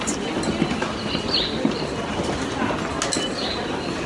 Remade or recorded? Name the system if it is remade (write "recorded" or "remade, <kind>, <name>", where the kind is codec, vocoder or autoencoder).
recorded